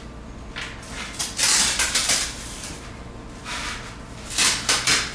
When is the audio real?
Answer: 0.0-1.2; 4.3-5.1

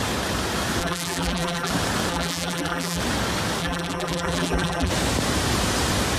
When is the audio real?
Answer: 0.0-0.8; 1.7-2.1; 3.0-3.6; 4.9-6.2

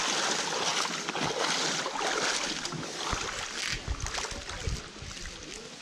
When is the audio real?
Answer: 0.0-5.8

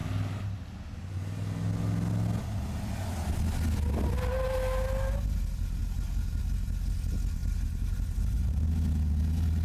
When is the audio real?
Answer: 0.0-7.4; 8.7-9.6